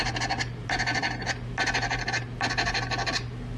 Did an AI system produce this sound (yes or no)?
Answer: no